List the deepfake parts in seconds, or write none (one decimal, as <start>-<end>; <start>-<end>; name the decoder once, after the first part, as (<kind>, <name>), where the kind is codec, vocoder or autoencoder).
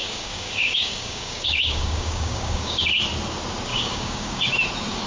0.0-3.0 (codec, DAC); 3.7-4.4